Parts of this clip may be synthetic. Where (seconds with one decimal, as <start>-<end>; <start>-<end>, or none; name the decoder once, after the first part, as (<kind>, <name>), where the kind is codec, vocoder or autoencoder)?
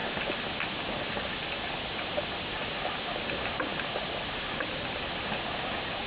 none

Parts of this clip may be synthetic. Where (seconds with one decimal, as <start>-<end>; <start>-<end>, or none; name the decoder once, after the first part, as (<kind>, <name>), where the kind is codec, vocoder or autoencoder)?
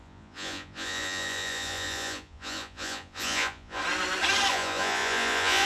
0.0-3.8 (vocoder, Vocos); 4.5-5.7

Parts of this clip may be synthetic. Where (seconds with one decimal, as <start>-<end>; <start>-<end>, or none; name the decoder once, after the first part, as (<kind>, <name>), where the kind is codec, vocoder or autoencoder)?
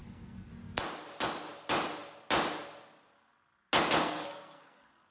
0.0-0.5 (codec, SNAC); 4.0-5.1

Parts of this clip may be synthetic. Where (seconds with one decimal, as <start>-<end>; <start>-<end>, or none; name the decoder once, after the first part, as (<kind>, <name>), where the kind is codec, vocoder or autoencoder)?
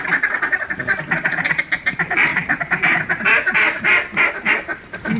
none